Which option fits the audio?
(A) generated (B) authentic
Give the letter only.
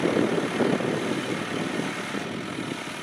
B